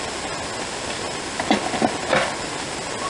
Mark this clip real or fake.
real